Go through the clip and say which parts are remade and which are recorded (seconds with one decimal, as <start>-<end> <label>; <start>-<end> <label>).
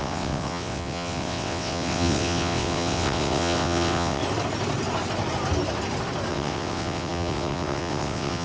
0.0-4.2 remade; 4.2-6.3 recorded; 6.3-8.4 remade